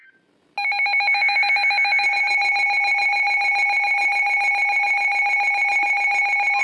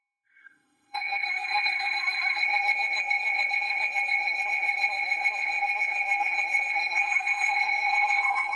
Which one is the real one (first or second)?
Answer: first